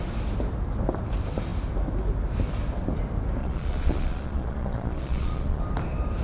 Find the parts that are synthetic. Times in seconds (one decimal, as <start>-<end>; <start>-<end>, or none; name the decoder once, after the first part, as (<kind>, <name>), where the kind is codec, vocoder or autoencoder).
3.4-5.6 (vocoder, Vocos)